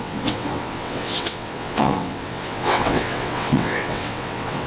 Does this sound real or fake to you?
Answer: fake